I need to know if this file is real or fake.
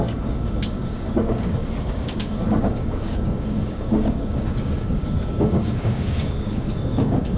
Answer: fake